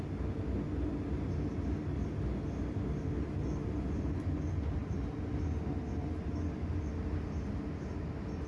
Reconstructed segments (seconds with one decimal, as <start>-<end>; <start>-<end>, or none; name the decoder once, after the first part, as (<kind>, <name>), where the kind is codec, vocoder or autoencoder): none